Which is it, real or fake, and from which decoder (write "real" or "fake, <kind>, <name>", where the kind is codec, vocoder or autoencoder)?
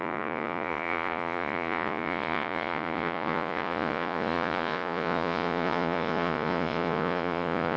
fake, vocoder, Vocos